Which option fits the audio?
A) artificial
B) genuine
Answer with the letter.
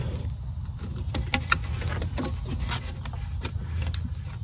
B